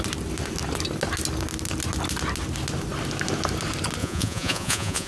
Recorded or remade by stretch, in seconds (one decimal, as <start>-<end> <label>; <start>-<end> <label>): 0.0-4.0 recorded; 4.0-5.1 remade

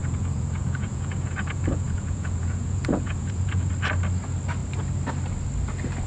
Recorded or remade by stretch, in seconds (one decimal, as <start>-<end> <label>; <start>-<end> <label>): 0.0-3.7 remade; 3.7-6.1 recorded

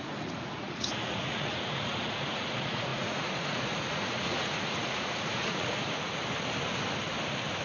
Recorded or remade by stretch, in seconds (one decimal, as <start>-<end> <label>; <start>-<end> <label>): 0.0-6.2 remade; 6.2-7.6 recorded

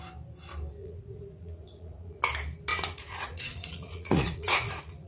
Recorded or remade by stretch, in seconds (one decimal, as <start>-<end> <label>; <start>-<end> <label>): 0.0-0.8 recorded; 0.8-2.2 remade; 2.2-2.7 recorded; 2.7-5.1 remade